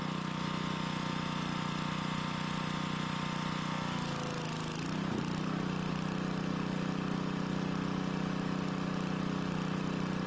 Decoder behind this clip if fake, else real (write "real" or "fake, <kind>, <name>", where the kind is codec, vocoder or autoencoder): real